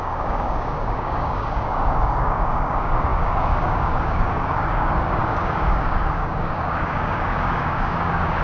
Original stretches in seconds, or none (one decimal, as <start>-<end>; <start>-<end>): none